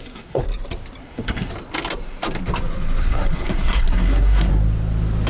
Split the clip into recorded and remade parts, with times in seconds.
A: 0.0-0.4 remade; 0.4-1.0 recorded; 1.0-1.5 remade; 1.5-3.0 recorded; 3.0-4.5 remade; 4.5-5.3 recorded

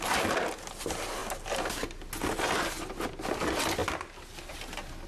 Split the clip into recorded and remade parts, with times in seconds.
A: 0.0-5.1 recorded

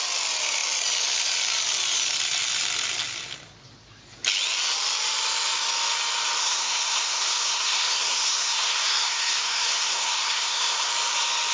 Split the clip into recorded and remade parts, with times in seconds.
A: 0.0-6.4 recorded; 6.4-10.9 remade; 10.9-11.5 recorded

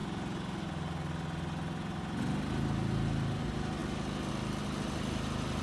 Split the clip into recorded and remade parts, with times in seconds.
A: 0.0-5.6 recorded

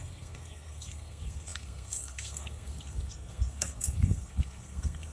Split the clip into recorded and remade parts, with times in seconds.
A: 0.0-5.1 remade

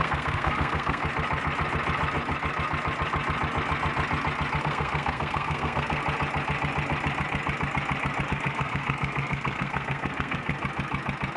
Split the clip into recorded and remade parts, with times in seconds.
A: 0.0-1.0 remade; 1.0-4.6 recorded; 4.6-6.0 remade; 6.0-8.3 recorded; 8.3-10.5 remade; 10.5-11.4 recorded

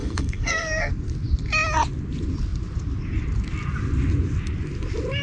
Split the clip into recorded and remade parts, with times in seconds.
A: 0.0-0.9 remade; 0.9-5.2 recorded

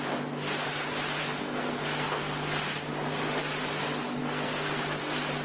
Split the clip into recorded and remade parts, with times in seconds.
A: 0.0-1.2 recorded; 1.2-2.2 remade; 2.2-4.2 recorded; 4.2-4.8 remade; 4.8-5.4 recorded